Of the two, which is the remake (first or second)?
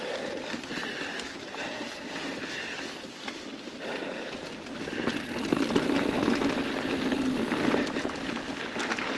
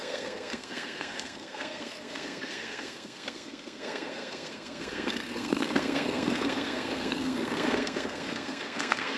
second